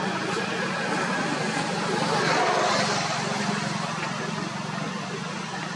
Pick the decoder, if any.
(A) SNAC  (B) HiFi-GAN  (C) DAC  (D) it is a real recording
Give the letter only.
D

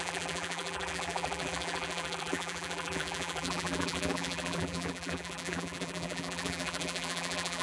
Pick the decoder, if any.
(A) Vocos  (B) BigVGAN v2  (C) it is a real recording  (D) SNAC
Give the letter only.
B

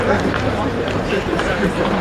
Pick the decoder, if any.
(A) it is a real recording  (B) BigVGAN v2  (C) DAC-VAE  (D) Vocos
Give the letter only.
B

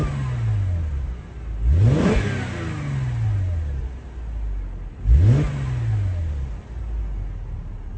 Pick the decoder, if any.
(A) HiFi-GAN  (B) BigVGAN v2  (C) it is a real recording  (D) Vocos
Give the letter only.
C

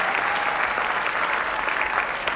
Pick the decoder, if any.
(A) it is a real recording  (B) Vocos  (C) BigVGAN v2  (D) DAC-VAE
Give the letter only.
A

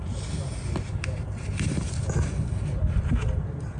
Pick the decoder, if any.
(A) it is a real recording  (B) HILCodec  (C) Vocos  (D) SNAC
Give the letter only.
A